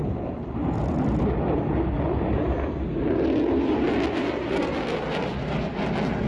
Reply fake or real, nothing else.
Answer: real